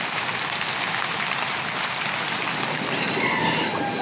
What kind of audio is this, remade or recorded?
recorded